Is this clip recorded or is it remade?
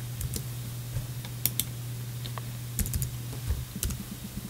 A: recorded